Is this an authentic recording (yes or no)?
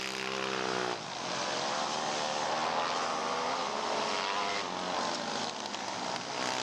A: yes